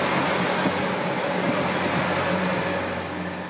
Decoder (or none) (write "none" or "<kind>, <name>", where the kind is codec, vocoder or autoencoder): none